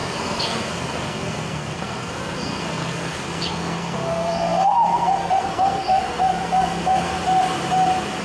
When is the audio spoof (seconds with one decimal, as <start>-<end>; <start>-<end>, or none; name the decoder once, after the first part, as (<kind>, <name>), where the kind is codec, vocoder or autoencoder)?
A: 0.0-7.1 (codec, SNAC)